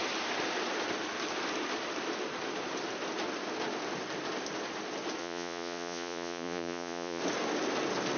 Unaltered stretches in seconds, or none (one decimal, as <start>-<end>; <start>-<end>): 0.0-5.2; 7.2-8.2